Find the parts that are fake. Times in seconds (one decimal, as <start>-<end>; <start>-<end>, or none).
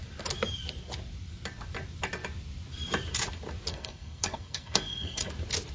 3.7-5.3